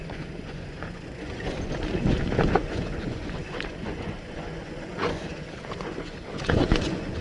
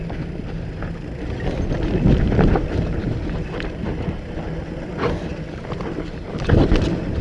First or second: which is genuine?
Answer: second